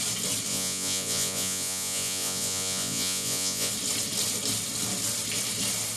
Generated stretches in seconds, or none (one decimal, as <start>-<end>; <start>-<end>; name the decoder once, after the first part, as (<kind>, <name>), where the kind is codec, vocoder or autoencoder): 0.5-3.7 (vocoder, Vocos)